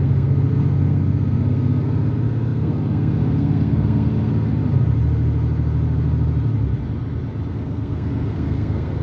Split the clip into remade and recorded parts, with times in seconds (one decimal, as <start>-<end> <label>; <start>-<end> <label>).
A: 0.0-4.3 remade; 4.3-7.5 recorded; 7.5-9.0 remade